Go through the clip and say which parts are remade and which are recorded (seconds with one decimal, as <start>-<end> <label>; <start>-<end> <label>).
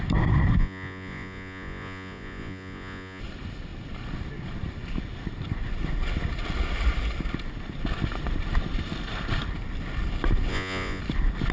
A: 0.0-0.6 recorded; 0.6-3.2 remade; 3.2-10.5 recorded; 10.5-11.0 remade; 11.0-11.5 recorded